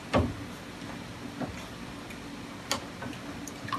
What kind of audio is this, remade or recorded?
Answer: recorded